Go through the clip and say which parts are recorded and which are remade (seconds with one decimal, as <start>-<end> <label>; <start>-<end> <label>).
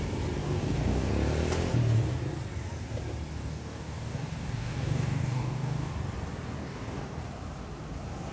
0.0-0.4 recorded; 0.4-1.1 remade; 1.1-3.4 recorded; 3.4-5.9 remade; 5.9-6.6 recorded; 6.6-7.2 remade; 7.2-8.3 recorded